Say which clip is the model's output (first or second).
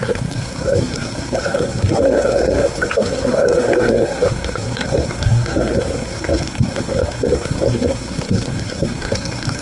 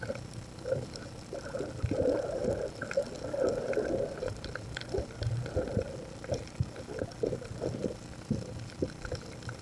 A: first